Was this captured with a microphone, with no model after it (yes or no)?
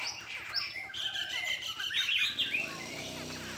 yes